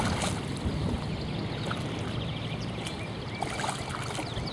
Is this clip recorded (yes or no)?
yes